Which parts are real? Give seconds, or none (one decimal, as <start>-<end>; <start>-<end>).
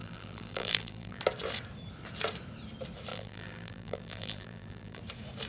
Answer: 1.2-3.1; 5.0-5.5